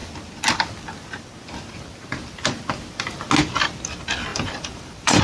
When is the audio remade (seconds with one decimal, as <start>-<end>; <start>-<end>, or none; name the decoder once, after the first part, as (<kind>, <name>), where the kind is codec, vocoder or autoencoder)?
4.3-5.2 (vocoder, BigVGAN v2)